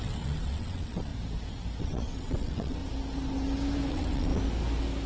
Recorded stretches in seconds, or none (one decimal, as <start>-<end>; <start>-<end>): 1.1-1.8; 2.8-3.9; 4.3-5.1